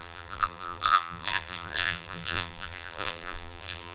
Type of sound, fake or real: fake